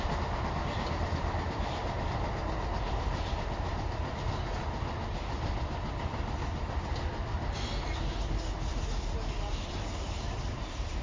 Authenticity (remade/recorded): recorded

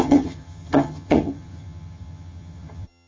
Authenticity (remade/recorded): remade